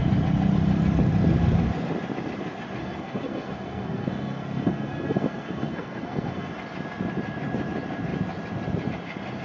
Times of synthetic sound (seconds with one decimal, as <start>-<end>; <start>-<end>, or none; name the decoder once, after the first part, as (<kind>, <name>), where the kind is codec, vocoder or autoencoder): 2.8-6.5 (codec, SNAC)

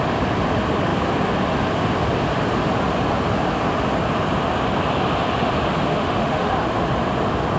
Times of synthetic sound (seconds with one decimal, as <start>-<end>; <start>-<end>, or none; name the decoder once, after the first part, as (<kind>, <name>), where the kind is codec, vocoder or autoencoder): 5.9-6.5 (autoencoder, DAC-VAE)

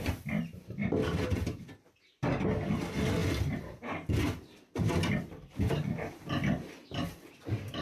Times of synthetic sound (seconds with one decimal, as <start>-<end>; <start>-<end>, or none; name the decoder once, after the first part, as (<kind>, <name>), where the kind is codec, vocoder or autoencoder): none

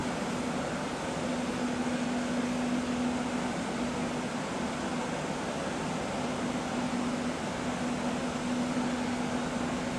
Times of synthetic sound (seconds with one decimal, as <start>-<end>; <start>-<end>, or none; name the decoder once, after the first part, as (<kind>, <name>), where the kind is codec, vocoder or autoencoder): none

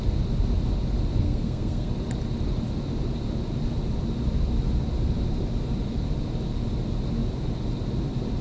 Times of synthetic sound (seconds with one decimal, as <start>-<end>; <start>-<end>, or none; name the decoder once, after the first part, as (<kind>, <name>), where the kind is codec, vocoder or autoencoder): 1.2-1.9 (codec, SNAC)